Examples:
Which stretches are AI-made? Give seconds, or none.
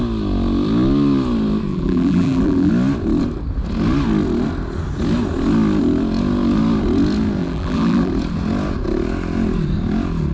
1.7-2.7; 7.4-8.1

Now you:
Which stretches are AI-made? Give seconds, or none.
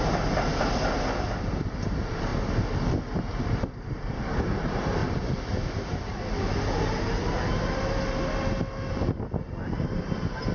0.0-2.3; 3.3-5.0; 9.7-10.5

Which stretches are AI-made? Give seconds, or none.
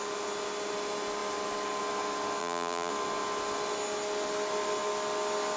2.4-2.9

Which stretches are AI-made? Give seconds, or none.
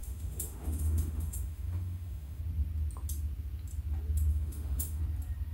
0.0-2.4; 4.3-5.0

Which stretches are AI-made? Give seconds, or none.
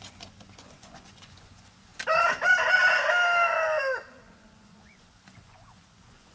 0.0-1.9; 4.1-6.3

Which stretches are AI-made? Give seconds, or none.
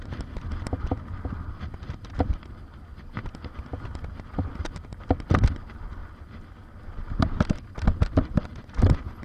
none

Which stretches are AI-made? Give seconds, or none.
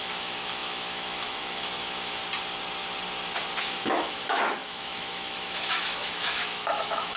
0.0-2.2; 3.6-7.2